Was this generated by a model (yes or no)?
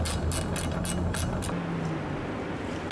no